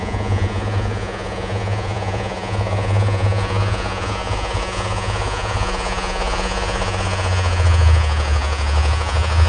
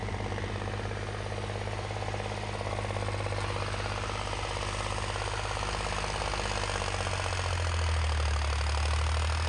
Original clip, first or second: second